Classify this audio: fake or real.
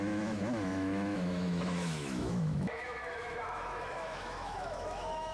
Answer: fake